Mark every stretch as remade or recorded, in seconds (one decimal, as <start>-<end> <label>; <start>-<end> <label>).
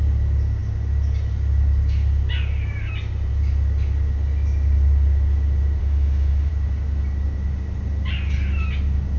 0.0-5.8 recorded; 5.8-6.5 remade; 6.5-9.2 recorded